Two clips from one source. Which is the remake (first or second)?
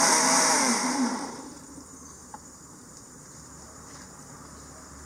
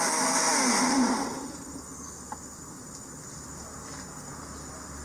first